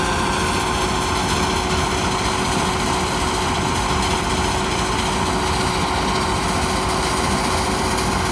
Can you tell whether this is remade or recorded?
recorded